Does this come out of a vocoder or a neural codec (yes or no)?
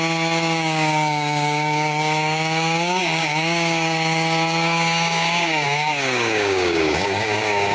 yes